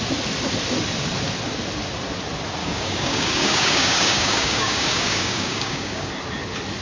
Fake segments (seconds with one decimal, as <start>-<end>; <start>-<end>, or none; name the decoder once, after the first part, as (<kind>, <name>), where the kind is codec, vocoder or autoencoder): 2.6-6.1 (codec, DAC)